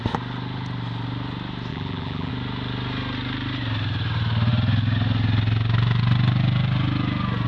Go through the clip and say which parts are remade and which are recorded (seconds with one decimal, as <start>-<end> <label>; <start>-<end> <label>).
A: 0.0-1.7 recorded; 1.7-2.3 remade; 2.3-7.5 recorded